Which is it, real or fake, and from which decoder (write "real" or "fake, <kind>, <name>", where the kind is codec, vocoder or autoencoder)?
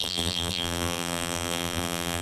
fake, vocoder, BigVGAN v2